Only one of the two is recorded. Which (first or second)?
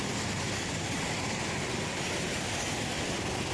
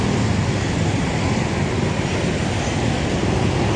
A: second